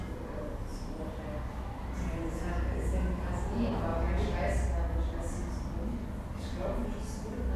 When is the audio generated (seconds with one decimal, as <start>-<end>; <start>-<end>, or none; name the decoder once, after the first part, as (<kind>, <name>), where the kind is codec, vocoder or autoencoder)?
none